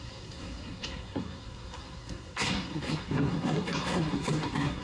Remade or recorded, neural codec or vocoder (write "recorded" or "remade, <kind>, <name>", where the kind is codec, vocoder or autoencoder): remade, codec, SNAC